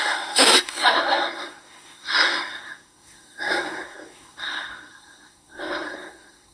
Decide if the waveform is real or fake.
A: fake